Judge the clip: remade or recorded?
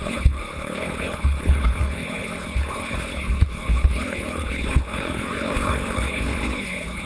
remade